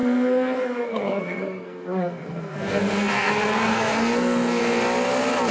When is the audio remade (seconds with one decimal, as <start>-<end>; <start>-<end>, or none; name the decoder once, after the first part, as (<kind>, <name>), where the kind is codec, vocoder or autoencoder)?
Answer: 0.0-3.3 (codec, SNAC); 3.7-4.6